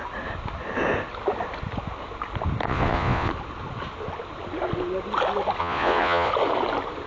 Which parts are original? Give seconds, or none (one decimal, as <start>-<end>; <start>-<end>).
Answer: 0.0-2.7; 3.3-5.6; 6.3-7.1